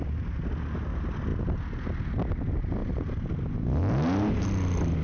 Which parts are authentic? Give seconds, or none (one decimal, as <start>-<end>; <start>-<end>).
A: 0.0-5.0

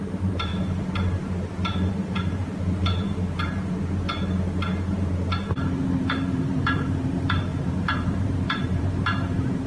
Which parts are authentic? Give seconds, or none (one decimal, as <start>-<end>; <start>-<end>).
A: 0.5-1.9; 2.4-6.0

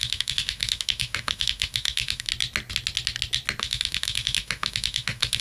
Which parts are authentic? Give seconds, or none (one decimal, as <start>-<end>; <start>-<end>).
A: 2.3-3.6

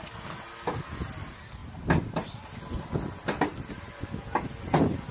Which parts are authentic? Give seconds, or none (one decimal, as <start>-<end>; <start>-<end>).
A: 0.0-5.1

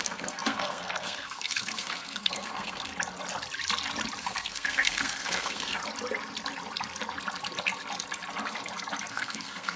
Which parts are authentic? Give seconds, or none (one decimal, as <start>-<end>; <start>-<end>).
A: 2.9-4.2; 5.8-9.1